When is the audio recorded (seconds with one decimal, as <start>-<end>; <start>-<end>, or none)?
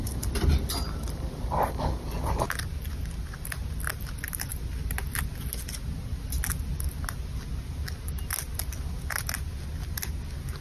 0.0-10.6